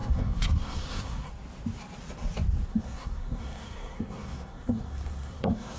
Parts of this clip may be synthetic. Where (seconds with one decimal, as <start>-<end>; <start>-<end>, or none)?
0.0-1.3; 2.7-5.8